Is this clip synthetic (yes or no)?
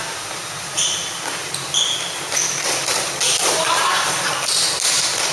no